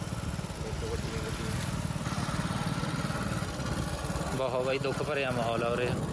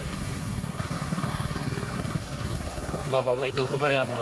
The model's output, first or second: second